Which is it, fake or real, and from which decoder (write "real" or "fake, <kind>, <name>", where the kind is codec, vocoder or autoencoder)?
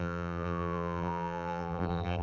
fake, vocoder, BigVGAN v2